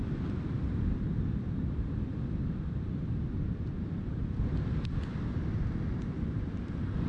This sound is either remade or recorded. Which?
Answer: remade